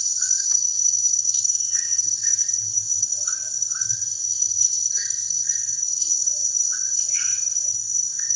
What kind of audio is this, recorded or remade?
remade